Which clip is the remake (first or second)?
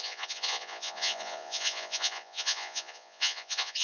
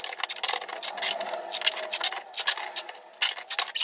first